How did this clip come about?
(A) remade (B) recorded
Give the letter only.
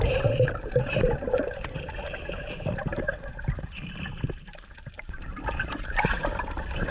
A